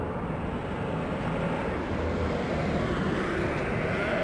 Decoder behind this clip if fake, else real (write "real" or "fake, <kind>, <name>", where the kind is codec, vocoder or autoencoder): real